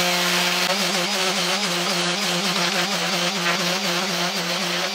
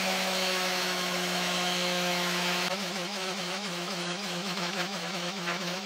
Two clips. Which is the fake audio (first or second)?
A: second